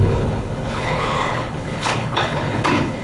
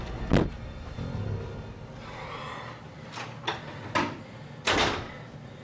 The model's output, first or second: first